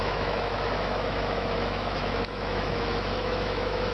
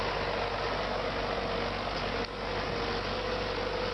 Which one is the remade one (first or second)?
first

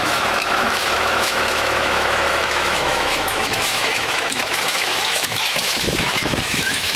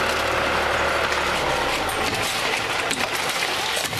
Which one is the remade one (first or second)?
first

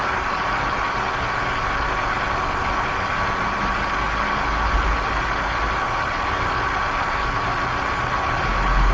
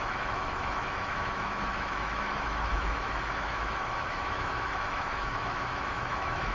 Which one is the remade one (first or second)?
second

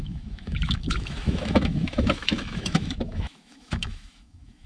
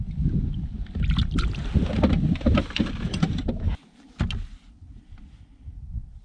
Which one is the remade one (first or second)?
first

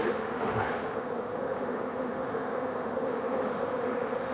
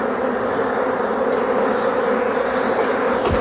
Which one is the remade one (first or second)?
first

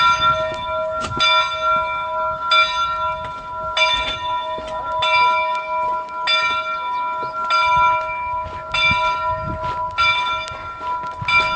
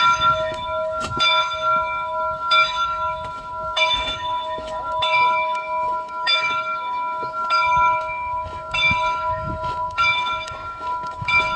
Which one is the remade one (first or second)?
second